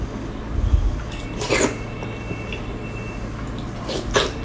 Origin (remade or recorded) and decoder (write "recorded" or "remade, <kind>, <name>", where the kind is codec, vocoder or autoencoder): recorded